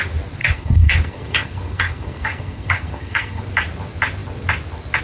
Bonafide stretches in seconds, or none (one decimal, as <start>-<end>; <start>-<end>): 0.0-0.4; 3.4-5.0